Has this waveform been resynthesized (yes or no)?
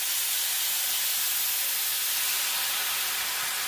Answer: no